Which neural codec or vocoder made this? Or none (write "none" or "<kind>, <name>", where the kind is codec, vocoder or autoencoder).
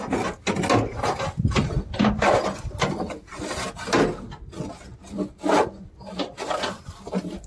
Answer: none